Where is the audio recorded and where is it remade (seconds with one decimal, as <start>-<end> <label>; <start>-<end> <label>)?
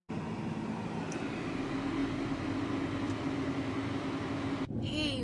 0.0-5.2 recorded